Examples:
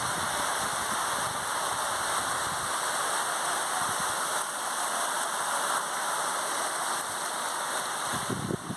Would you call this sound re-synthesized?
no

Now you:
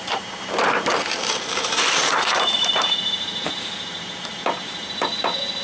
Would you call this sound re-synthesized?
yes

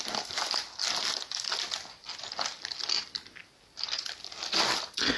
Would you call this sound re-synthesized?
no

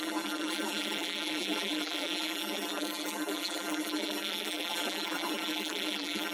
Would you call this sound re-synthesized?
yes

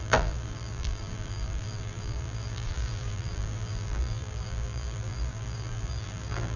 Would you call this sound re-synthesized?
yes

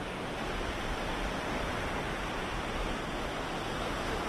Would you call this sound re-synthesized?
no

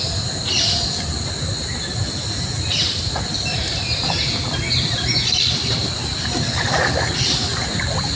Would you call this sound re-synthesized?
no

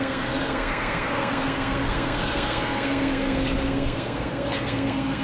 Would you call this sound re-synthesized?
yes